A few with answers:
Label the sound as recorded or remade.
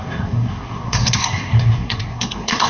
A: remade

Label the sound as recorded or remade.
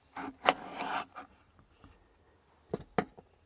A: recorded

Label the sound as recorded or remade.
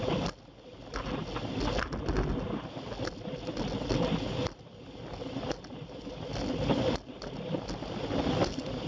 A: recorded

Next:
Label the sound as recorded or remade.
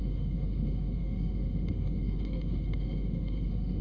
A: remade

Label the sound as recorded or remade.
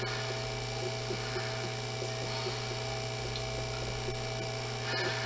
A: recorded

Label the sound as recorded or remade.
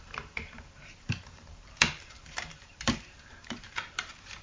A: remade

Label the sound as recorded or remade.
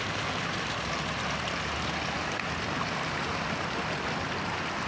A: recorded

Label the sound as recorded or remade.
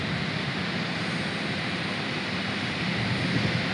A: remade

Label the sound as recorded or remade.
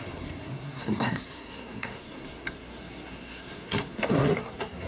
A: remade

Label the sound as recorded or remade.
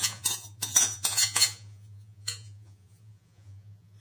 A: remade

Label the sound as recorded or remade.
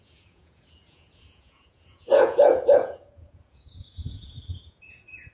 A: remade